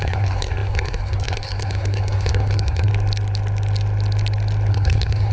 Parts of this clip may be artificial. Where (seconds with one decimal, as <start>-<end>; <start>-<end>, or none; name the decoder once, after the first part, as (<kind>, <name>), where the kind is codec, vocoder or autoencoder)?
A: 0.0-2.9 (codec, SNAC); 4.7-5.3